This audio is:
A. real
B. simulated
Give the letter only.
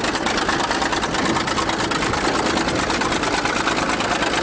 A